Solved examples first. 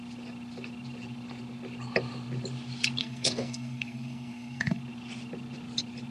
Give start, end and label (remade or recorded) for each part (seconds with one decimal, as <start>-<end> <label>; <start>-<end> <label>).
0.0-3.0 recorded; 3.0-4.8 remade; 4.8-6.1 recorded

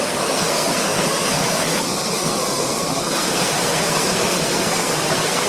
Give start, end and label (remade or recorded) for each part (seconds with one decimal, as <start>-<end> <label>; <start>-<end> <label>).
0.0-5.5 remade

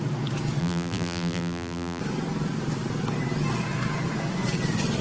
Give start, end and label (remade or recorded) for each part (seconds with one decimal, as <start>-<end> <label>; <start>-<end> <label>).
0.0-0.6 recorded; 0.6-2.0 remade; 2.0-5.0 recorded

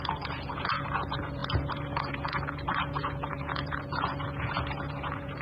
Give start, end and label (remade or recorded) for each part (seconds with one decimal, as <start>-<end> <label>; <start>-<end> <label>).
0.0-5.4 remade